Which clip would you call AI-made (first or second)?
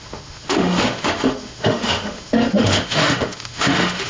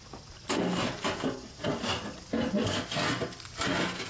first